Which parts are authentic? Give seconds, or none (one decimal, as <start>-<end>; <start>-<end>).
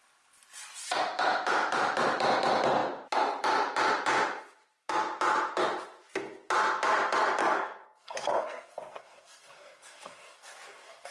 0.0-7.4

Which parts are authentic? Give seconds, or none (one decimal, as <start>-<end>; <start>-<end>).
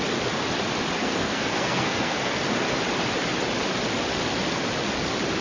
0.0-1.0; 2.4-5.4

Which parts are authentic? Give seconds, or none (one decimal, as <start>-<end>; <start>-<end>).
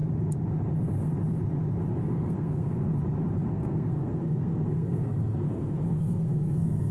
0.0-1.9; 2.9-3.5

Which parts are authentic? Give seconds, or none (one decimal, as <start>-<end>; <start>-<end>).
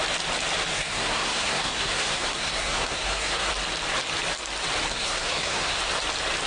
0.0-0.7; 3.5-4.9; 5.8-6.5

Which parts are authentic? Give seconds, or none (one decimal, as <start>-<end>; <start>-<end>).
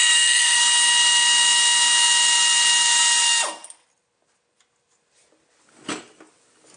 0.6-6.8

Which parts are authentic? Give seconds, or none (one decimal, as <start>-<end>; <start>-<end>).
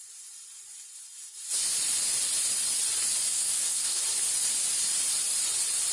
0.0-3.3; 4.0-5.9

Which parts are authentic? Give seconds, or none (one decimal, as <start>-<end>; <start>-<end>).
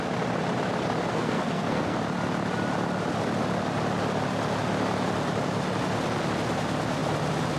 0.0-1.1; 2.0-7.6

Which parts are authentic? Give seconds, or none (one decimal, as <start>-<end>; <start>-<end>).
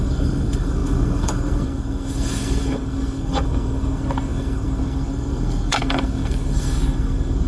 none